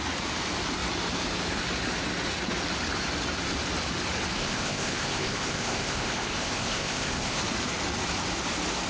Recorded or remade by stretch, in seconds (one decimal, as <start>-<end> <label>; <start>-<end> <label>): 0.0-4.4 recorded; 4.4-7.4 remade; 7.4-8.9 recorded